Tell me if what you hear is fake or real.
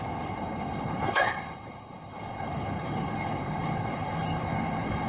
fake